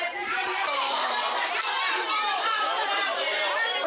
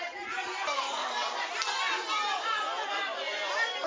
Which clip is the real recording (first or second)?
second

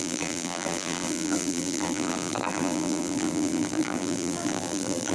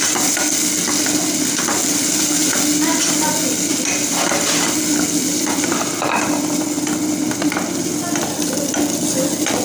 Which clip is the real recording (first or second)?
second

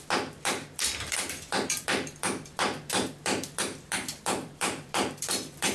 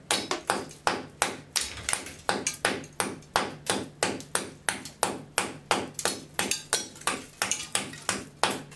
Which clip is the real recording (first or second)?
second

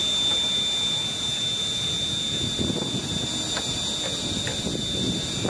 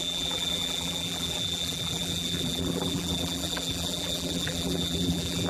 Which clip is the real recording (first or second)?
first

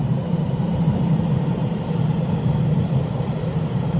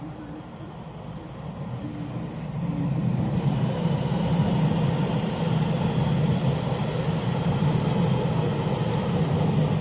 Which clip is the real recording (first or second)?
second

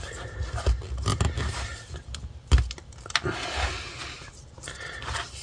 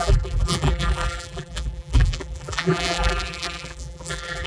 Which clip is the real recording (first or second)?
first